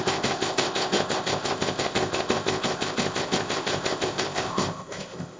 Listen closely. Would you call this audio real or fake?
fake